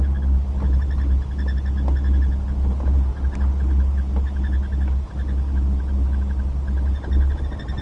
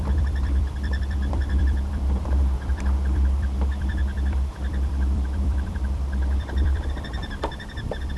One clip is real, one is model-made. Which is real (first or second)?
first